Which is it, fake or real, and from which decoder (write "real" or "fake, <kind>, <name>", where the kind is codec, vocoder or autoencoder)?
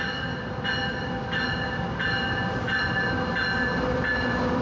real